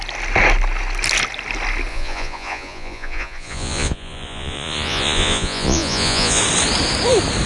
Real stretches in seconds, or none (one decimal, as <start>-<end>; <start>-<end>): 0.0-1.9; 6.4-7.5